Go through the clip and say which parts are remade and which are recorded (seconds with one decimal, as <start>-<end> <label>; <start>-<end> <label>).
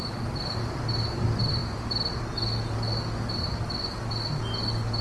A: 0.0-5.0 recorded